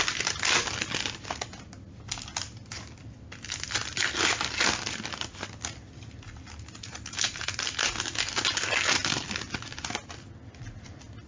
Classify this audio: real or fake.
real